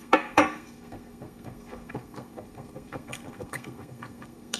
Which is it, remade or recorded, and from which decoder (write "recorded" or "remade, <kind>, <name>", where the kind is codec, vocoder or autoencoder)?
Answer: remade, codec, SNAC